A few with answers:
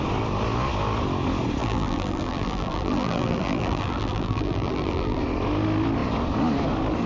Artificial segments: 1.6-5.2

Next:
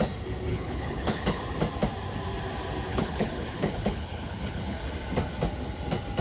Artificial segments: 0.5-1.4; 2.9-4.8

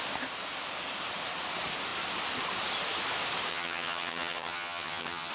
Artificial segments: 3.5-5.3

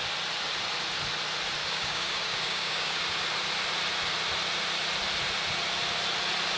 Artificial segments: 1.6-3.0

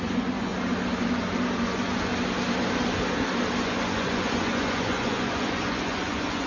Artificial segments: 0.0-0.5; 1.6-2.1; 3.6-6.5

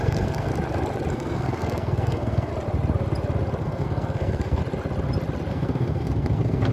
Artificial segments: 0.0-0.5; 1.1-2.5; 3.6-4.6; 5.5-6.7